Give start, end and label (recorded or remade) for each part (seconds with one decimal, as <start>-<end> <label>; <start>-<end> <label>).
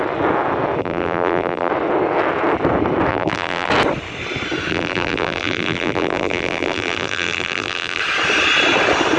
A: 0.0-0.8 recorded; 0.8-1.7 remade; 1.7-3.1 recorded; 3.1-3.7 remade; 3.7-4.7 recorded; 4.7-8.0 remade; 8.0-9.2 recorded